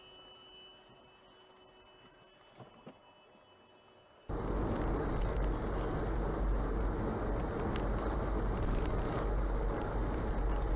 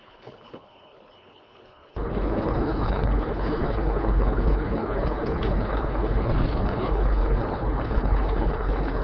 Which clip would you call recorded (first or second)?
first